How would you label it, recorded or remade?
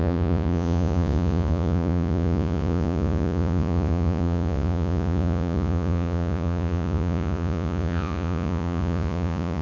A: remade